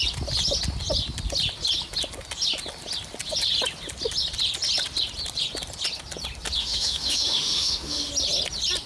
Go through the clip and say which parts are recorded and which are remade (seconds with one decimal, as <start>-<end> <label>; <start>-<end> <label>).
0.0-6.6 recorded; 6.6-8.1 remade; 8.1-8.9 recorded